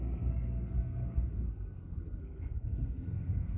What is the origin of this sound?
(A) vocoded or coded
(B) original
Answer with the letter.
A